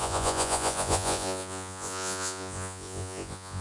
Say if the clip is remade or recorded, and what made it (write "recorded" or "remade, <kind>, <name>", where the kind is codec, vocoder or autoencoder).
remade, vocoder, Vocos